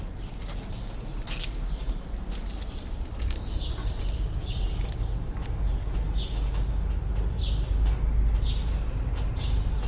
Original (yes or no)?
yes